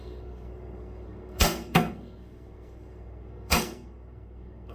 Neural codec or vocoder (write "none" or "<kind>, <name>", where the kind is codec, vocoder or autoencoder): codec, SNAC